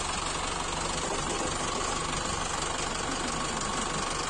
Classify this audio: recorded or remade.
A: recorded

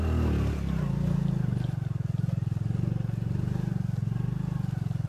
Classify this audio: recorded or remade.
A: recorded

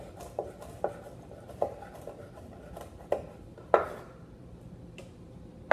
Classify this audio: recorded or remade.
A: recorded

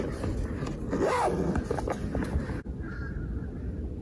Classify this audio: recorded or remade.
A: recorded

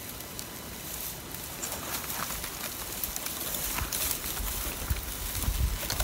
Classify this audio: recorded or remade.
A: recorded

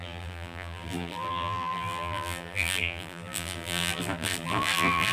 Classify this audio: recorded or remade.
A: remade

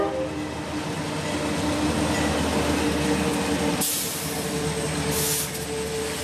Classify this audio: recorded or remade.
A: recorded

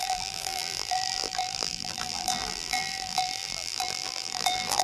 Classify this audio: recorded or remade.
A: remade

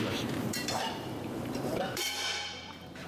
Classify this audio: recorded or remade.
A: remade